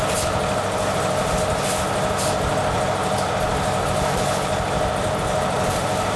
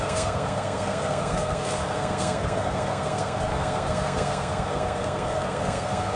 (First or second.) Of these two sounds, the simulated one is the second